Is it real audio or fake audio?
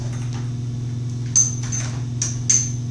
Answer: real